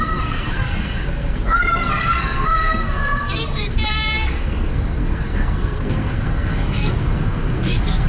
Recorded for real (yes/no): no